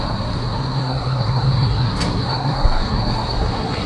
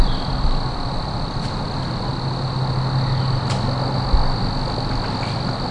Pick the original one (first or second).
second